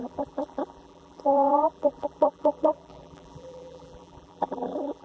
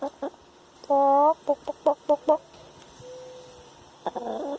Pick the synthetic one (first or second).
first